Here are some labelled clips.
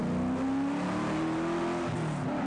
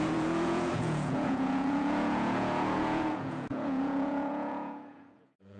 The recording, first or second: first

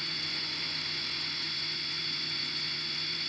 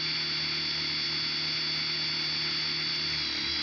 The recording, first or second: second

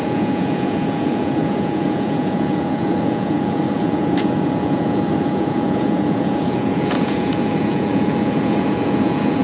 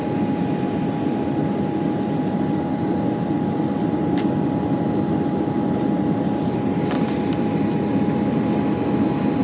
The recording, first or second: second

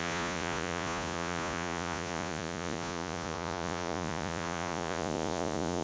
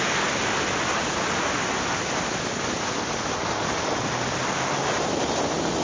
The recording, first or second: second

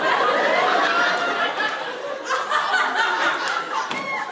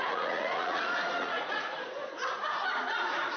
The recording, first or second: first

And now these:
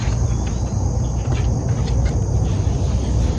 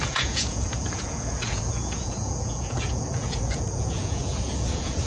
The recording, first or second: first